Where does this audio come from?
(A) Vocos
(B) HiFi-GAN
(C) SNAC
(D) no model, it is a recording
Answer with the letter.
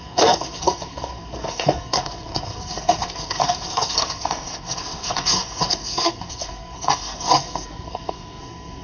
C